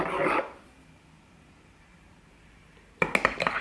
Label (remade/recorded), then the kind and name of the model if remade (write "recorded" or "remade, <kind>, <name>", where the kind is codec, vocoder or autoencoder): recorded